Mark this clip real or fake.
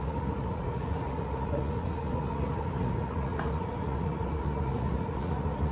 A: fake